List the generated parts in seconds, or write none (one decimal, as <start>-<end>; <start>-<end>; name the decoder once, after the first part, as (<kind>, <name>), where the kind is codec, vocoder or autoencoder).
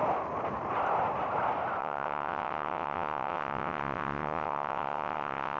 1.8-5.6 (vocoder, WaveNeXt)